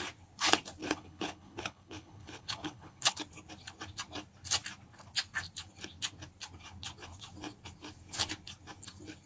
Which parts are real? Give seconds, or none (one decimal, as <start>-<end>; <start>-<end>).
0.0-0.8; 3.2-9.3